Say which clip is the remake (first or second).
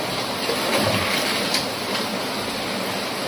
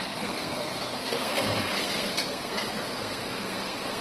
second